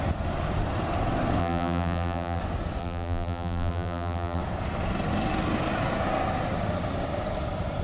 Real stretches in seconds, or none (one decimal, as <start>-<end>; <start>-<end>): 0.0-1.4; 2.4-2.8; 4.4-7.8